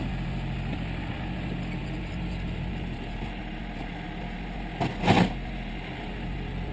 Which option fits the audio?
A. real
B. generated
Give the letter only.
A